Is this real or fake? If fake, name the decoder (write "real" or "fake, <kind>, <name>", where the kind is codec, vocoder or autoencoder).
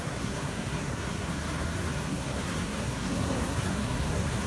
fake, codec, SNAC